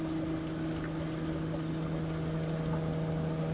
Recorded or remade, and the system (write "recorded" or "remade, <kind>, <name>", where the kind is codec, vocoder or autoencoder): recorded